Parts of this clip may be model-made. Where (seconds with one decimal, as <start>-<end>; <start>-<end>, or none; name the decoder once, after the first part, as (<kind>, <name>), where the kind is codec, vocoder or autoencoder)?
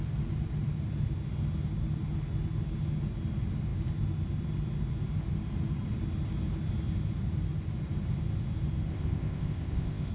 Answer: 8.9-10.1 (codec, ZipCodec)